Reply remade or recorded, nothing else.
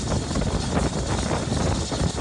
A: recorded